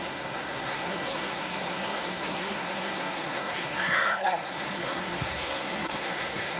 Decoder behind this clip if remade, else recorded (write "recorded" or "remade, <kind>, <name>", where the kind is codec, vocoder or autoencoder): remade, codec, SNAC